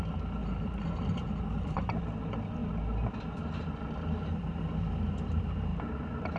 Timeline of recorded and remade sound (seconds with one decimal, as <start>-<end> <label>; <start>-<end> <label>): 0.0-0.4 recorded; 0.4-2.0 remade; 2.0-6.4 recorded